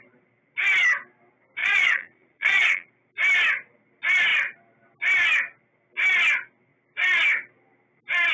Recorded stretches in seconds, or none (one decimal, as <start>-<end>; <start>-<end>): 0.0-1.6; 2.9-8.3